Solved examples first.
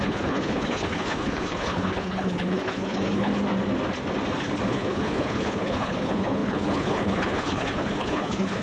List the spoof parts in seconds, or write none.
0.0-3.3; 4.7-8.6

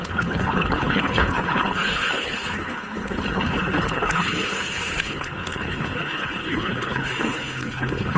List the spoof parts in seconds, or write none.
0.0-8.2